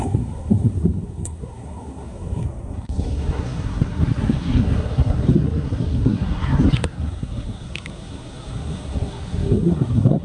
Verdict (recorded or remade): remade